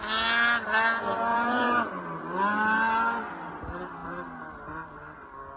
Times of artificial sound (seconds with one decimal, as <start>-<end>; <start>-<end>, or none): 1.3-1.9